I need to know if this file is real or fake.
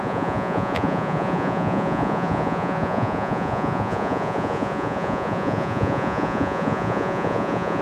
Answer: fake